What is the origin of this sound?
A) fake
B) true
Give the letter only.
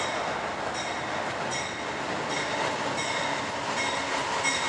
B